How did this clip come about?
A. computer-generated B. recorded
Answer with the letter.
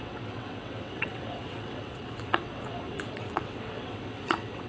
A